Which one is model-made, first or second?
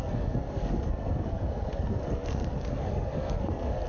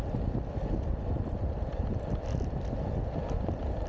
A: first